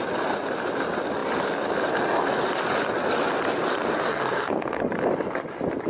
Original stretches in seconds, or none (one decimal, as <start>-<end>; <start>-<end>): 0.0-4.1; 4.8-5.9